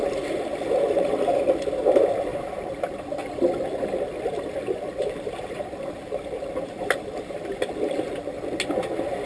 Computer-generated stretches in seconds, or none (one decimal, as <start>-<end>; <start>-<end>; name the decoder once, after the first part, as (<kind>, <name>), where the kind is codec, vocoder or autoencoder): 0.5-1.7 (vocoder, BigVGAN v2); 2.3-7.2